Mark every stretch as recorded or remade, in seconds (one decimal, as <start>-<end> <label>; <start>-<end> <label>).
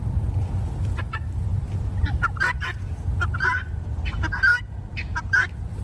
0.0-5.8 recorded